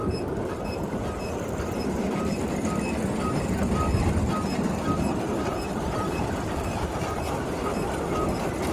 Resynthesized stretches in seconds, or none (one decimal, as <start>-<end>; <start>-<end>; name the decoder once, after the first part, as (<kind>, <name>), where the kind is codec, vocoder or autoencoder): 0.0-1.9 (vocoder, BigVGAN v2); 5.5-7.2